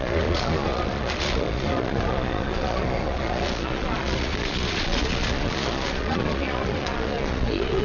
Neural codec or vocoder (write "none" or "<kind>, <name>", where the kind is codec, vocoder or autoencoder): vocoder, Vocos